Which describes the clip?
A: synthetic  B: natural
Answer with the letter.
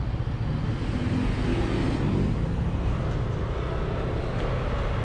B